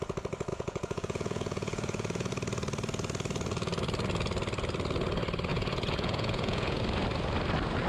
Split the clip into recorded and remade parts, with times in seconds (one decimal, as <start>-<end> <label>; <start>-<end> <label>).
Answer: 0.0-0.5 recorded; 0.5-2.3 remade; 2.3-5.5 recorded; 5.5-6.8 remade; 6.8-7.9 recorded